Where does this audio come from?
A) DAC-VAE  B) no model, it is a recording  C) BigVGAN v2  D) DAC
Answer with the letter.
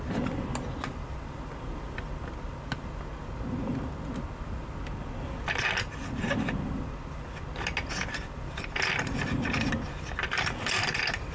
B